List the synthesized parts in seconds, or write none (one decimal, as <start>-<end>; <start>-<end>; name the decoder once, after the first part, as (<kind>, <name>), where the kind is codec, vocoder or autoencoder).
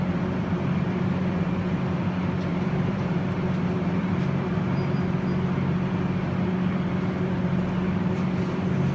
2.5-3.1 (vocoder, BigVGAN v2)